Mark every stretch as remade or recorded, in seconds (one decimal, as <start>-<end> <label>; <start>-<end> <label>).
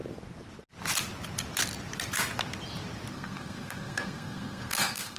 0.0-3.1 recorded; 3.1-5.2 remade